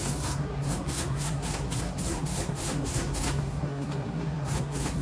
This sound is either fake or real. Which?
fake